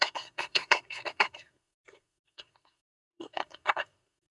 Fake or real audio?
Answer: fake